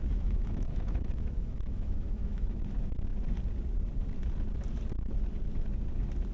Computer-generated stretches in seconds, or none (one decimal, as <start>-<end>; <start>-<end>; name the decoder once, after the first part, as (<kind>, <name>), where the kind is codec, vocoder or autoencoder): 0.0-2.7 (autoencoder, DAC-VAE)